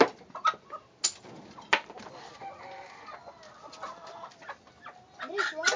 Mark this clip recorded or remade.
recorded